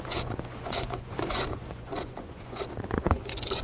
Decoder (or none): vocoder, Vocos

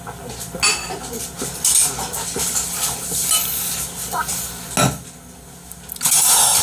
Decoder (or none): none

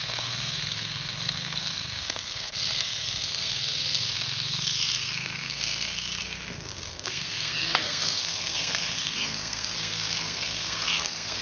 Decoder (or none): codec, SNAC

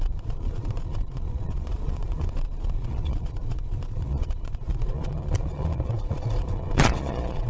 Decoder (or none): vocoder, Vocos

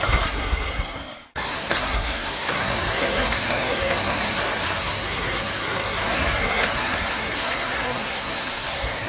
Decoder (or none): codec, SNAC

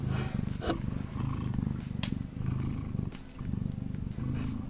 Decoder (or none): none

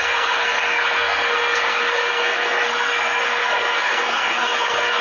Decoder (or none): codec, SNAC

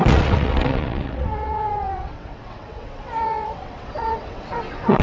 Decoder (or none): vocoder, WaveNeXt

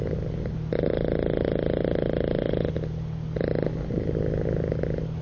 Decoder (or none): none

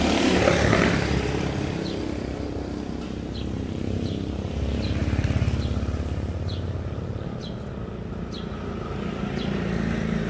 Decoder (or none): none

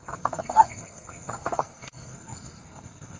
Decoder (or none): codec, SNAC